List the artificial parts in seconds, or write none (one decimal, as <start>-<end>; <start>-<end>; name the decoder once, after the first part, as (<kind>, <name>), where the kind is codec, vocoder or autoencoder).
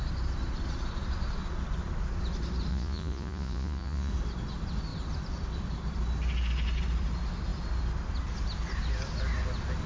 2.7-4.1 (vocoder, Vocos)